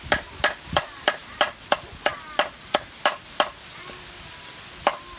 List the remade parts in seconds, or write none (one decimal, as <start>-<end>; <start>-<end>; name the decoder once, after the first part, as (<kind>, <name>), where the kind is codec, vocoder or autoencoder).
none